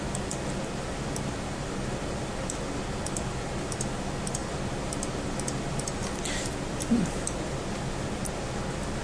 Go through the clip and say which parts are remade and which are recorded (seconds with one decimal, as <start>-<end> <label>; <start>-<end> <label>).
0.0-9.0 recorded

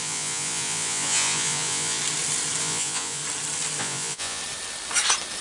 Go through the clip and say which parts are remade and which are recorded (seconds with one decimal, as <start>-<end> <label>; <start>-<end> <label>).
0.0-2.0 remade; 2.0-2.6 recorded; 2.6-3.2 remade; 3.2-3.8 recorded; 3.8-4.4 remade; 4.4-5.4 recorded

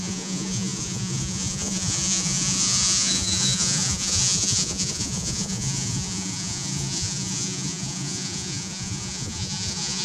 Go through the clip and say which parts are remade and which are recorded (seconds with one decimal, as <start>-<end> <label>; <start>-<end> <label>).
0.0-10.0 remade

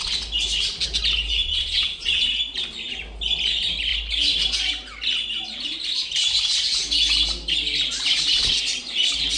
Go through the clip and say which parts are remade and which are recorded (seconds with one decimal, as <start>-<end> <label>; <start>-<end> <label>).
0.0-1.4 recorded; 1.4-2.3 remade; 2.3-9.4 recorded